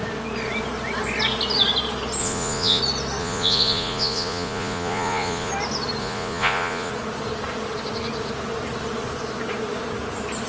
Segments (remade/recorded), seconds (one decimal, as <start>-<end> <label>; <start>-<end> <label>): 0.0-2.2 recorded; 2.2-2.8 remade; 2.8-3.2 recorded; 3.2-5.5 remade; 5.5-6.0 recorded; 6.0-6.9 remade; 6.9-10.5 recorded